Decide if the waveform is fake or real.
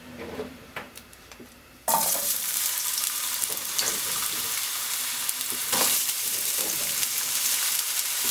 fake